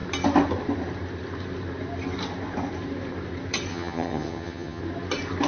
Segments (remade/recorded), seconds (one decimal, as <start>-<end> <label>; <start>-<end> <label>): 0.0-3.7 recorded; 3.7-4.8 remade; 4.8-5.5 recorded